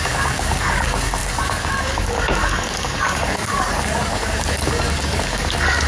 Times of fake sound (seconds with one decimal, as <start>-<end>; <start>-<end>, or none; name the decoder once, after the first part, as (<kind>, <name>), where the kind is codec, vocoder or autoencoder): 0.0-5.9 (codec, DAC)